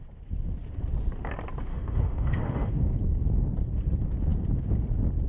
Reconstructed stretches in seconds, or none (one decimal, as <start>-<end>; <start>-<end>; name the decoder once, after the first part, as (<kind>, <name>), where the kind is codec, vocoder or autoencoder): 1.7-2.7 (autoencoder, DAC-VAE)